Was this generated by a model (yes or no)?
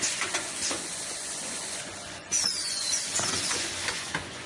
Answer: yes